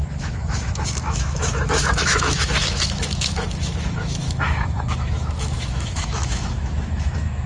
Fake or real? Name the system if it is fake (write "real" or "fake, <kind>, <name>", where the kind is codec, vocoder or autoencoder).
fake, autoencoder, DAC-VAE